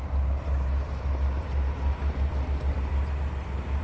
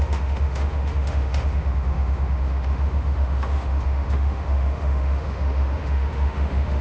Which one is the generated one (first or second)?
second